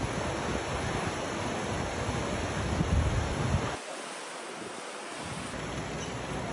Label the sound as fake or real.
real